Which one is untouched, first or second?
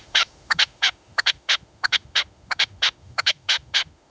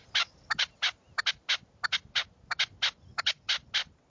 second